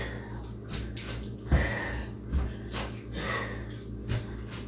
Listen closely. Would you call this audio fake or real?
real